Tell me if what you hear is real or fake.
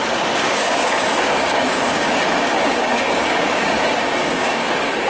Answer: fake